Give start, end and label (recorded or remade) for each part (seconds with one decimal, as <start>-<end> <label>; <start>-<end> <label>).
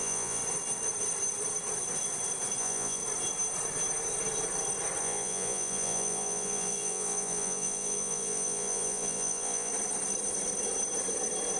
0.0-0.4 remade; 0.4-2.6 recorded; 2.6-3.0 remade; 3.0-5.0 recorded; 5.0-9.7 remade; 9.7-11.6 recorded